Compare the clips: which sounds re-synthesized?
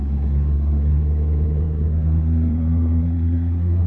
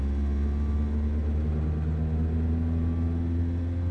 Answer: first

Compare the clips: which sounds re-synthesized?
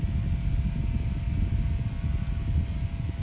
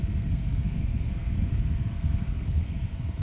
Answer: second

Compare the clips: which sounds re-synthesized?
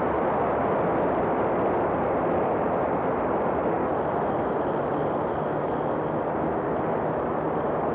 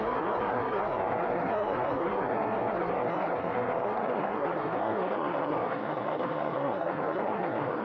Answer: second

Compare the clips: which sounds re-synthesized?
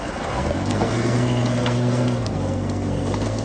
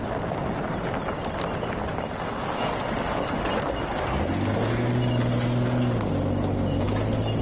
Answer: first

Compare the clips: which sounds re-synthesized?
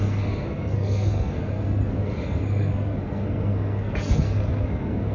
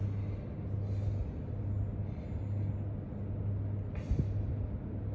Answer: first